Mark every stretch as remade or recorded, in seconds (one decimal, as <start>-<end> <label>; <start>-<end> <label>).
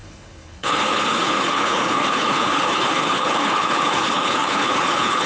0.0-5.3 remade